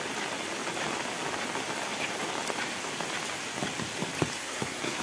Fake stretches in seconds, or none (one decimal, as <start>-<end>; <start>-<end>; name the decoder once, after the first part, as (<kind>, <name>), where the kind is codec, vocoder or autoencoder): 4.4-5.0 (codec, SNAC)